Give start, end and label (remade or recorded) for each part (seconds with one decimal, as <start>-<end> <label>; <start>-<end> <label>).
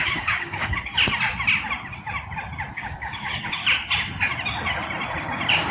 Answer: 0.0-0.9 remade; 0.9-2.7 recorded; 2.7-3.6 remade; 3.6-5.7 recorded